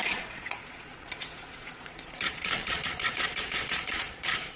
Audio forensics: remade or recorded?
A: remade